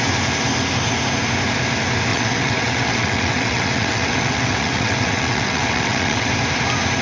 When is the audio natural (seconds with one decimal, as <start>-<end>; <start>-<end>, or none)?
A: 0.0-2.1; 6.3-7.0